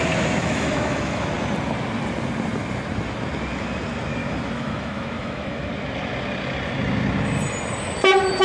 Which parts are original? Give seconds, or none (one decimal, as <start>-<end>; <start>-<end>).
0.0-0.4; 1.3-4.2; 5.7-8.4